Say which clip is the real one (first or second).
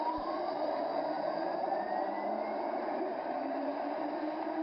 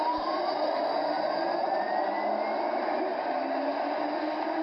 second